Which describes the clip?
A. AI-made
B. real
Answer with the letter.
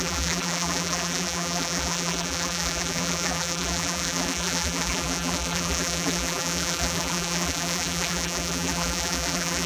A